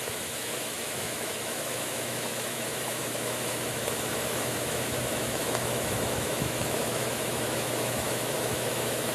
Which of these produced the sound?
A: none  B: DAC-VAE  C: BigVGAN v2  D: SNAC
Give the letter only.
B